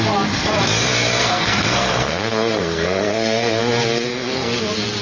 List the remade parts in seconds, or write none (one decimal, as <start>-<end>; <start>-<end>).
1.2-3.6; 4.1-4.6